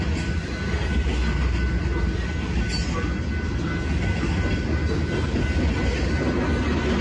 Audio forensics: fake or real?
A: real